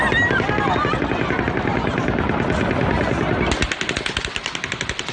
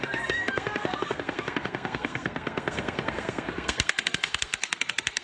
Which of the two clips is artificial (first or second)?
second